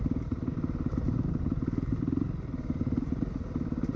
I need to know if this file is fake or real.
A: fake